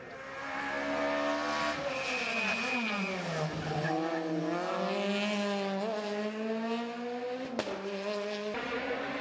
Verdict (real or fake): real